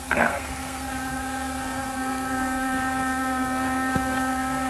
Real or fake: fake